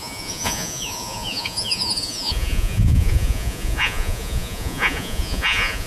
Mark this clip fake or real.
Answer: fake